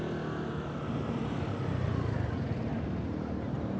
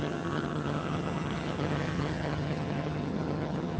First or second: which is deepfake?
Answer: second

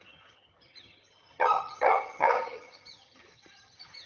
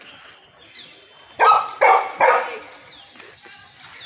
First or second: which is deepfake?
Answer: first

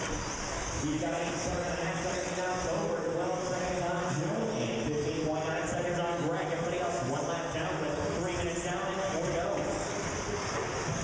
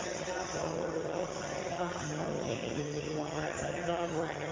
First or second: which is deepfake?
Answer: second